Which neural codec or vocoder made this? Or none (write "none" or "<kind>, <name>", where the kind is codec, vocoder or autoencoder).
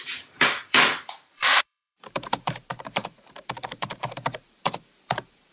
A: vocoder, BigVGAN v2